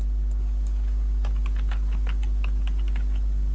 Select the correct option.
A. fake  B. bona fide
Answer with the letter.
B